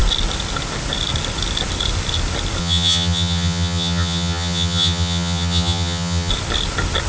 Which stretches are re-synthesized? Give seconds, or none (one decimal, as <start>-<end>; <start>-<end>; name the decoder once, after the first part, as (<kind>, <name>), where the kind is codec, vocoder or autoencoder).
2.6-6.3 (vocoder, HiFi-GAN)